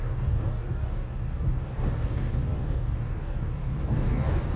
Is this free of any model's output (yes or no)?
no